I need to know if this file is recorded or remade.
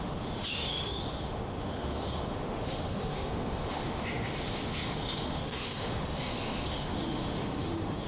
remade